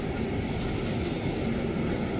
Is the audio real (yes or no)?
yes